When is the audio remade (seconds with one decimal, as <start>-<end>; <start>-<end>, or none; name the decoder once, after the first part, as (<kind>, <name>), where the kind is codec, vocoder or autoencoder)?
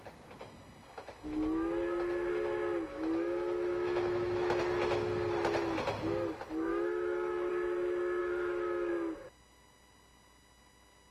2.9-4.6 (autoencoder, DAC-VAE); 6.7-7.5; 8.2-8.9